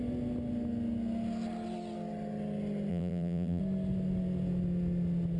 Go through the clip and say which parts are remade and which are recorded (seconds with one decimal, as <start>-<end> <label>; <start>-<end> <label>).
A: 0.0-2.9 recorded; 2.9-3.6 remade; 3.6-5.4 recorded

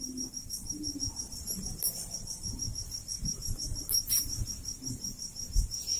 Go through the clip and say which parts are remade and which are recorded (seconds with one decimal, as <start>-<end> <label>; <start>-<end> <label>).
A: 0.0-0.7 recorded; 0.7-4.1 remade; 4.1-6.0 recorded

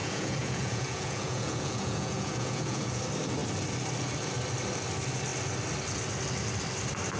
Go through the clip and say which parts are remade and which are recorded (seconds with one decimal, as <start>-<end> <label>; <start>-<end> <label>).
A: 0.0-3.0 remade; 3.0-7.2 recorded

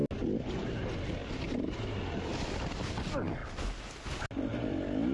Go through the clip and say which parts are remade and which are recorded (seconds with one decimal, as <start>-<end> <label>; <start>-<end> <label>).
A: 0.0-1.2 recorded; 1.2-2.3 remade; 2.3-5.1 recorded

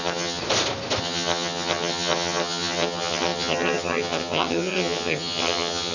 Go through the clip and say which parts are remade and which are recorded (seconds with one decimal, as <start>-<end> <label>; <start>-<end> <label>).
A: 0.0-0.4 remade; 0.4-1.0 recorded; 1.0-5.9 remade

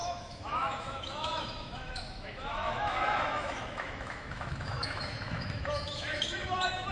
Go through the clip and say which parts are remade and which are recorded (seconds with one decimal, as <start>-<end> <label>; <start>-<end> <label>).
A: 0.0-6.9 remade

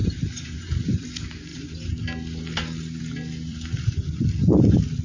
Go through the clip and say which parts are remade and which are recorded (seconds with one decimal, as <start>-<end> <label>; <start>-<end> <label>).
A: 0.0-1.0 remade; 1.0-3.5 recorded; 3.5-4.2 remade; 4.2-5.0 recorded

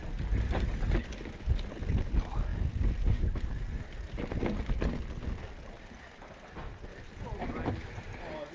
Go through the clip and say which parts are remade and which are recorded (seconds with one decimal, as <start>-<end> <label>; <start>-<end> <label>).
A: 0.0-8.5 recorded